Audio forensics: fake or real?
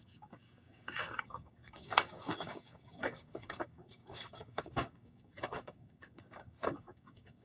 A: fake